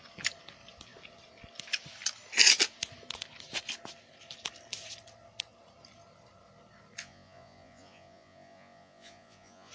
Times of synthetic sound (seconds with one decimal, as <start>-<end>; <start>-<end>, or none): 7.0-9.7